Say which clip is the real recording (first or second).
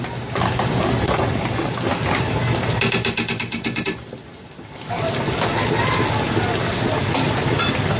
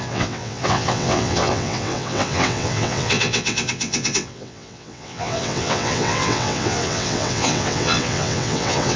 first